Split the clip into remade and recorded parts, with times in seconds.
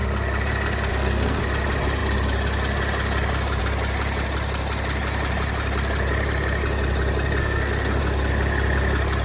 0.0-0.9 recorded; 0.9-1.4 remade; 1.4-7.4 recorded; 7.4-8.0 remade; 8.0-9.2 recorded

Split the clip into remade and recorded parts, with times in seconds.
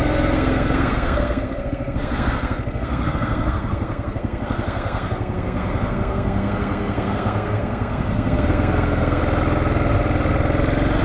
0.0-9.2 remade; 9.2-11.0 recorded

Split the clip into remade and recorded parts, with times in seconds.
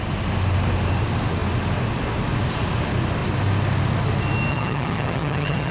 0.0-4.5 recorded; 4.5-5.7 remade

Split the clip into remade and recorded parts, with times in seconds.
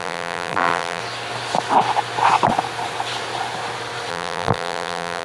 0.0-1.0 remade; 1.0-4.1 recorded; 4.1-5.2 remade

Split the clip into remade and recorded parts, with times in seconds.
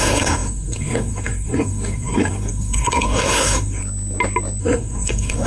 0.0-3.8 remade; 3.8-4.6 recorded; 4.6-5.5 remade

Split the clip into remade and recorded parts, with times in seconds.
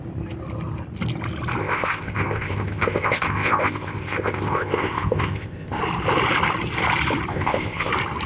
0.0-1.6 recorded; 1.6-5.8 remade; 5.8-7.3 recorded; 7.3-7.9 remade; 7.9-8.3 recorded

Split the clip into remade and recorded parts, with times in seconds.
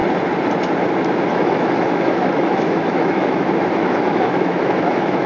0.0-1.3 recorded; 1.3-5.3 remade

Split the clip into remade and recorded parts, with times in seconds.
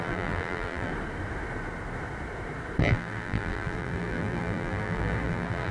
0.0-0.9 remade; 0.9-2.8 recorded; 2.8-5.7 remade